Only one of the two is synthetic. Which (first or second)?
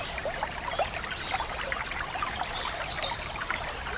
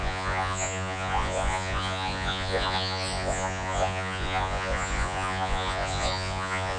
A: second